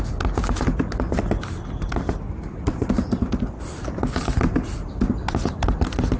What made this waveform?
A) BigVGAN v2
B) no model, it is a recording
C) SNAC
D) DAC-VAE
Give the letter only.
B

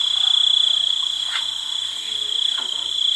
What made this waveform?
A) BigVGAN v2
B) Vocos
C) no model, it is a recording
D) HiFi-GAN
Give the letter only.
C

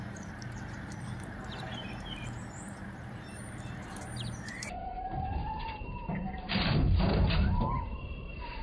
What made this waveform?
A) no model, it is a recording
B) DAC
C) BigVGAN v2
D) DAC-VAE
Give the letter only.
C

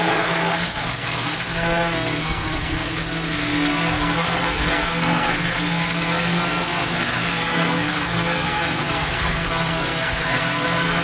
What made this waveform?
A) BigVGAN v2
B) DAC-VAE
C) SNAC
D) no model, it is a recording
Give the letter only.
C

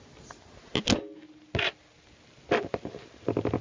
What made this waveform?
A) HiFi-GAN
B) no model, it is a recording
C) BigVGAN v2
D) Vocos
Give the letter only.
B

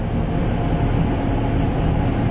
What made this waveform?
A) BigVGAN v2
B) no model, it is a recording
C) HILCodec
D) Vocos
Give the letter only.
B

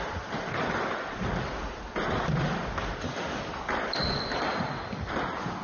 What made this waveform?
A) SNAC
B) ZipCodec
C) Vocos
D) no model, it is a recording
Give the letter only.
D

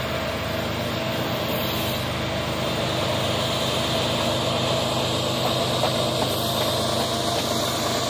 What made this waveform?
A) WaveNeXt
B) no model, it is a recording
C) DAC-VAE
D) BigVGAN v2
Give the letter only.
B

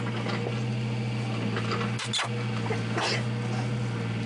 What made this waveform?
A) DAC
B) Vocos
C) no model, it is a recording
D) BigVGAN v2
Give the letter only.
C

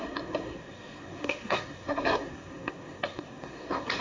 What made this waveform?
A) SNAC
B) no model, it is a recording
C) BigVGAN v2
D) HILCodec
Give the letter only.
A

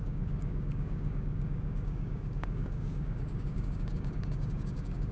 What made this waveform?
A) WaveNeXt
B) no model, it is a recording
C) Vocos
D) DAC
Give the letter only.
D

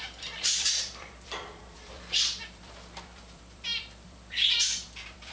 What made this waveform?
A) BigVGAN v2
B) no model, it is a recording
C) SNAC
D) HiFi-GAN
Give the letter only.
A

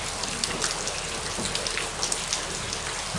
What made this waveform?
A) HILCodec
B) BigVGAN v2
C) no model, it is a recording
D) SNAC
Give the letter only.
C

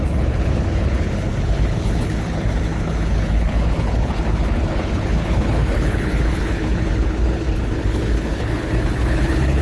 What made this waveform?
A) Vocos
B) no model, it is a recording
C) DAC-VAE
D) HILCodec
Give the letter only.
D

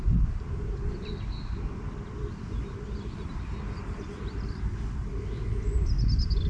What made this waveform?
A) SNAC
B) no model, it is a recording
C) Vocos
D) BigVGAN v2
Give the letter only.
B